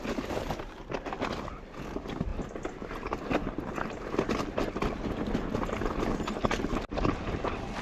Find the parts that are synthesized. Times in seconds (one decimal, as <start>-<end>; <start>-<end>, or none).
none